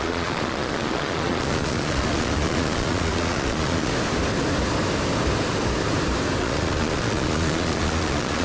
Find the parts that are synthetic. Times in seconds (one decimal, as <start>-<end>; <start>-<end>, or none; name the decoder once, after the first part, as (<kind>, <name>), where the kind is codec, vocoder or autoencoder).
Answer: 0.0-3.9 (vocoder, Vocos); 6.4-8.4